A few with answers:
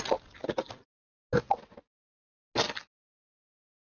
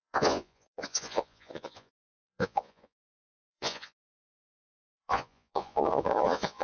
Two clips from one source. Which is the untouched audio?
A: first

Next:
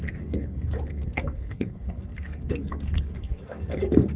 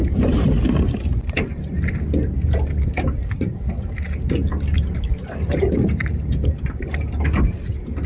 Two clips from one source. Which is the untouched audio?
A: second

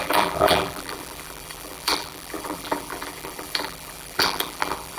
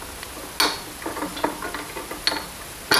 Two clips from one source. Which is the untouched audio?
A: second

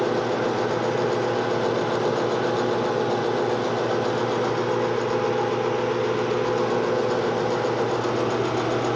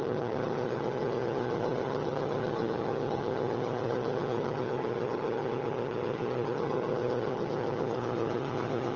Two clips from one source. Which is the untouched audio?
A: first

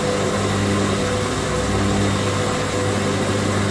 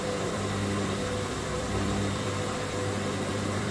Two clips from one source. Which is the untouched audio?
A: first